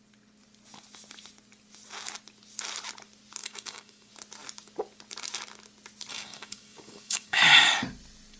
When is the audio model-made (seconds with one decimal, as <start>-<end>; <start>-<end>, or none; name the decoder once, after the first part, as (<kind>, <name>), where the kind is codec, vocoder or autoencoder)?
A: 3.4-4.1 (codec, DAC); 6.1-7.4